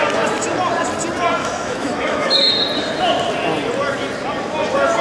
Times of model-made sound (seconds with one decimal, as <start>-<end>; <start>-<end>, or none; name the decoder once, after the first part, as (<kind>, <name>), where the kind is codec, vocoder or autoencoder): 1.4-2.5 (autoencoder, DAC-VAE)

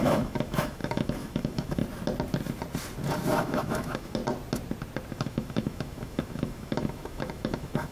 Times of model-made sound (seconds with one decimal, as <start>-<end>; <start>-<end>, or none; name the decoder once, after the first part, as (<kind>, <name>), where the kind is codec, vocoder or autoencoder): 0.0-1.8 (autoencoder, DAC-VAE); 3.4-4.2; 5.1-7.9

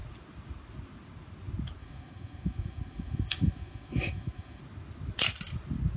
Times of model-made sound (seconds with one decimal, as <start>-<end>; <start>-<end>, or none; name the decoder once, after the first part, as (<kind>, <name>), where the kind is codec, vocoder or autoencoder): 1.8-4.6 (autoencoder, DAC-VAE)